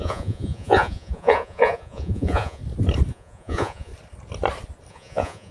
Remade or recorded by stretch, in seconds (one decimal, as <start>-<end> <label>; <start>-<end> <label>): 0.0-2.6 remade; 2.6-3.1 recorded; 3.1-3.9 remade; 3.9-4.9 recorded; 4.9-5.5 remade